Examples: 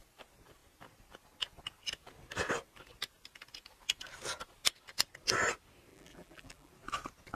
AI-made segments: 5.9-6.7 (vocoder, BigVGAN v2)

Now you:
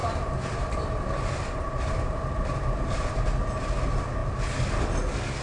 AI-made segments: 0.0-3.2 (vocoder, BigVGAN v2)

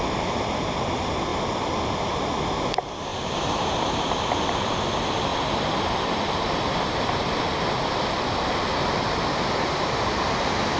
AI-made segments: 3.1-3.7 (vocoder, BigVGAN v2)

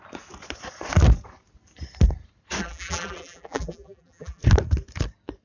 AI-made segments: 2.6-4.4 (vocoder, BigVGAN v2)

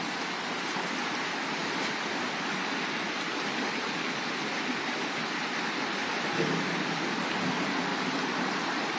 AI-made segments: 1.6-2.6 (vocoder, BigVGAN v2); 6.1-7.2

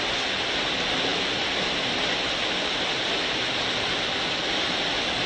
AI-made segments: none